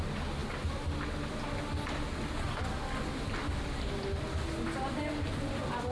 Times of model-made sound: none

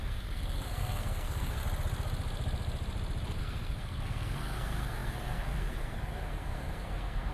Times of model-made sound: 0.0-1.6 (codec, SNAC); 3.4-7.3

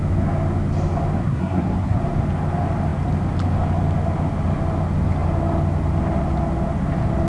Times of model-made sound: 1.2-2.0 (codec, SNAC)

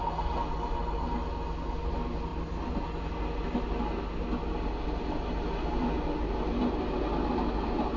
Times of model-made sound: none

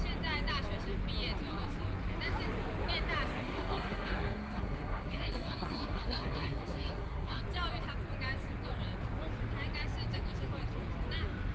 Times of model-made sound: 3.4-7.4 (codec, SNAC)

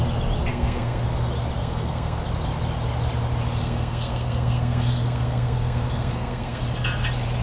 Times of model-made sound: 0.5-1.0 (codec, SNAC); 1.6-2.2; 3.6-6.6

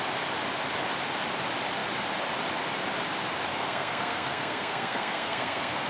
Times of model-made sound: 3.5-5.9 (codec, SNAC)

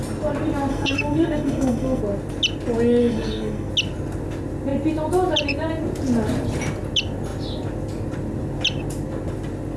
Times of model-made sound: 0.7-2.0 (codec, SNAC); 3.0-3.7